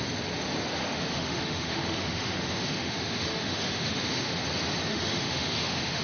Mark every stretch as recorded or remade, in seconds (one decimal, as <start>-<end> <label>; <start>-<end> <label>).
0.0-0.8 recorded; 0.8-4.4 remade; 4.4-4.9 recorded; 4.9-6.0 remade

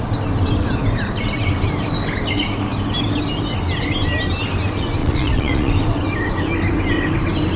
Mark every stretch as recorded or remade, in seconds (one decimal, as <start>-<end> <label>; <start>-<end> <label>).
0.0-5.0 recorded; 5.0-5.7 remade; 5.7-7.6 recorded

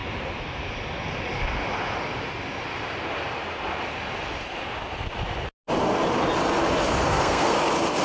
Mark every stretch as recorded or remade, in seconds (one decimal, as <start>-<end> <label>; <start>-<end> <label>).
0.0-7.1 recorded; 7.1-7.6 remade; 7.6-8.0 recorded